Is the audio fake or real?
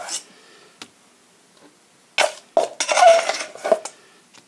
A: real